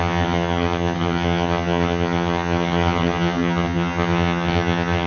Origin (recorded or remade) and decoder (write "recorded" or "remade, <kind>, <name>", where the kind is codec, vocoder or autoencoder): remade, vocoder, HiFi-GAN